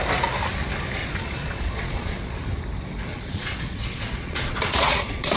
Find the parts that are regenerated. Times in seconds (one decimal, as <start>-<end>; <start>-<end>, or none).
1.0-2.3; 3.1-5.4